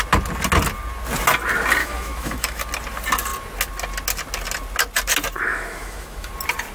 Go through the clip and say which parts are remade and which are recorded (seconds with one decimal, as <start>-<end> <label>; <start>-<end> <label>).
0.0-1.8 recorded; 1.8-2.6 remade; 2.6-5.5 recorded; 5.5-6.3 remade; 6.3-6.7 recorded